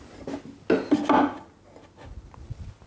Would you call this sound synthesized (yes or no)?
no